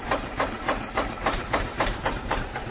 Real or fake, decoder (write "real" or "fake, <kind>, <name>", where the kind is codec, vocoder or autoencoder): fake, vocoder, BigVGAN v2